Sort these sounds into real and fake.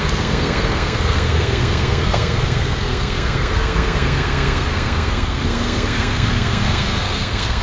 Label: fake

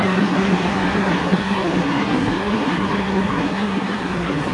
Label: fake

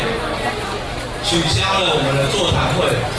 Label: real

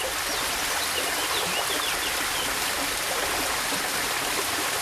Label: real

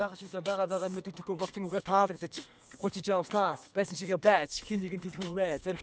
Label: fake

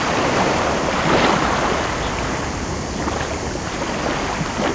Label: real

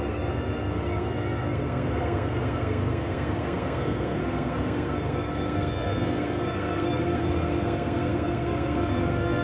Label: fake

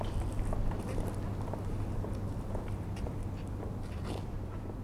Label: real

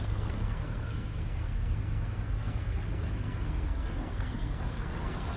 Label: fake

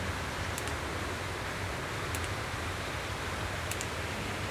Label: real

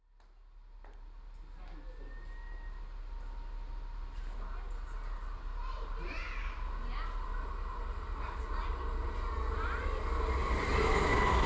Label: real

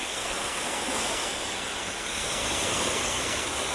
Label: fake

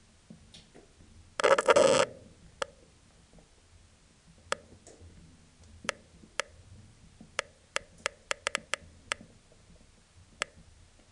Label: real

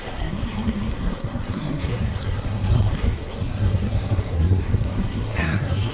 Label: fake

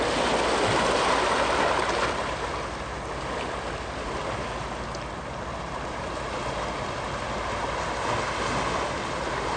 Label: real